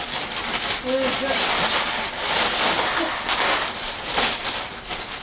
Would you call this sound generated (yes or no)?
no